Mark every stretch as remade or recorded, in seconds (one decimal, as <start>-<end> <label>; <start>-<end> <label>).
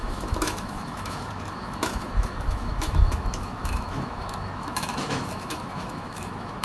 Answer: 0.0-6.6 remade